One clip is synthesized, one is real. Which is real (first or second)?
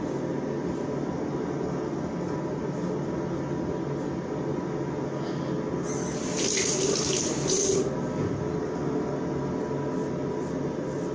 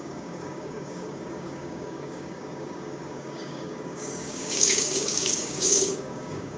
first